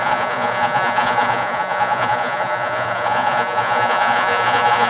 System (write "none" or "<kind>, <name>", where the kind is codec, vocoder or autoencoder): vocoder, Vocos